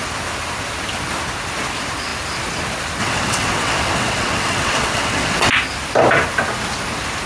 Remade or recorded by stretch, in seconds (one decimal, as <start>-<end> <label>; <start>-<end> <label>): 0.0-3.0 recorded; 3.0-5.5 remade; 5.5-7.3 recorded